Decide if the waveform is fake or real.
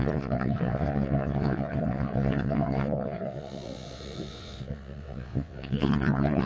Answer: fake